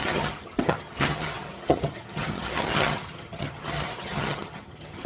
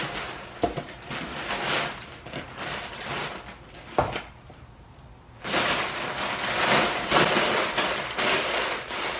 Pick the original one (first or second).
second